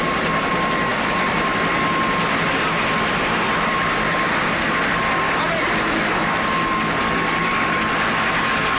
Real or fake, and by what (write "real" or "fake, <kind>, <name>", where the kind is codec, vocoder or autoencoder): real